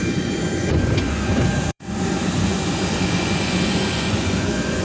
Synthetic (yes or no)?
yes